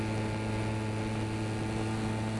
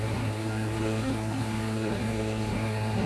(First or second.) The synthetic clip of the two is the second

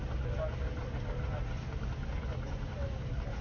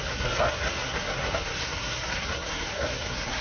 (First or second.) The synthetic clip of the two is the second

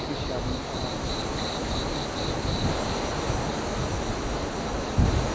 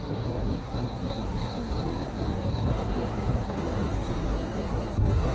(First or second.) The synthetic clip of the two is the second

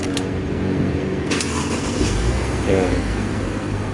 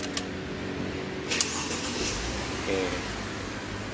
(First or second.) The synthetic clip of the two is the first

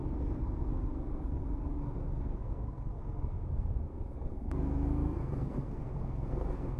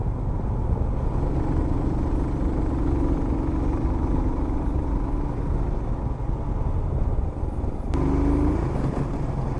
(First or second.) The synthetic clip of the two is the first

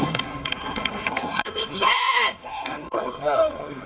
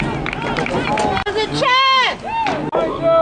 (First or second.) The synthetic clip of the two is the first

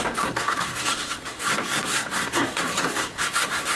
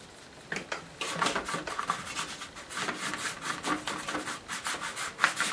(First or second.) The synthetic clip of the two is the first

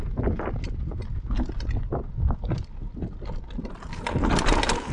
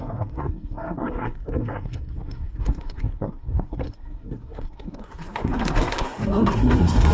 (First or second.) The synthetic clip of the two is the second